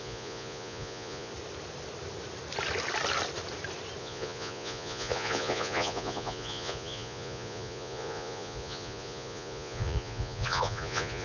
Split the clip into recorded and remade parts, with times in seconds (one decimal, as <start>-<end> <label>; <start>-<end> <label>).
0.0-1.3 remade; 1.3-4.0 recorded; 4.0-11.2 remade